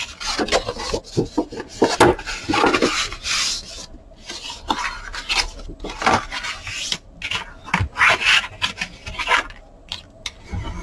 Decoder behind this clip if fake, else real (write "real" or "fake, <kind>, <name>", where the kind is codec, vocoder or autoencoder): real